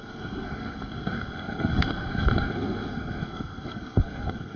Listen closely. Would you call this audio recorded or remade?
remade